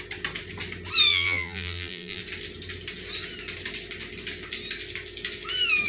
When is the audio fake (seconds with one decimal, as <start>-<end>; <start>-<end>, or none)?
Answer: 1.1-2.2